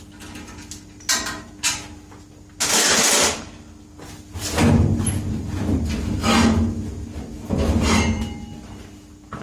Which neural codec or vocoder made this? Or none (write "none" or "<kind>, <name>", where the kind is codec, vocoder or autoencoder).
none